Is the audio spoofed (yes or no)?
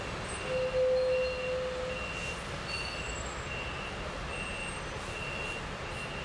no